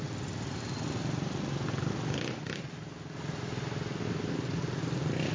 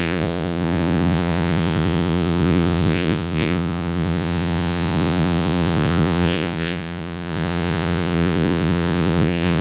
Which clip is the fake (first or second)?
second